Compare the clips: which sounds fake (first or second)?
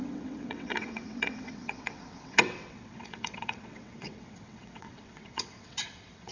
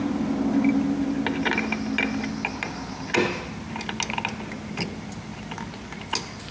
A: first